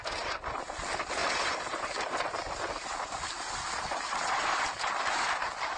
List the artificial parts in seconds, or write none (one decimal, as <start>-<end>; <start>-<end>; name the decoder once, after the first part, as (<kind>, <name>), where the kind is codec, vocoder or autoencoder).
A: none